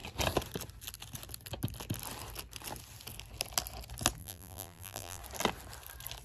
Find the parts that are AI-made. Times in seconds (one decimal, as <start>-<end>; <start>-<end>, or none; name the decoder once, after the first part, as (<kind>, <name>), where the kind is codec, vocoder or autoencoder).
4.2-5.2 (vocoder, BigVGAN v2)